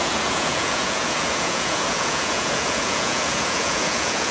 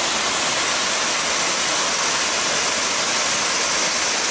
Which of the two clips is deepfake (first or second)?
first